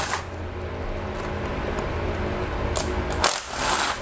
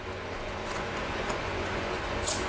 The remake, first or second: second